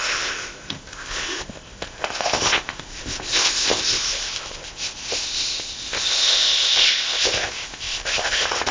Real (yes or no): no